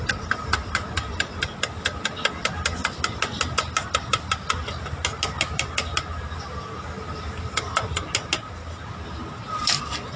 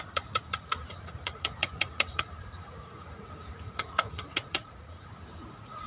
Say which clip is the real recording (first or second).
first